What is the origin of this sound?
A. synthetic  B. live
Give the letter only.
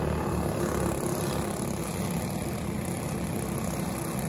B